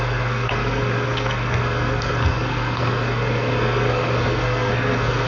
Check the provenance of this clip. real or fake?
fake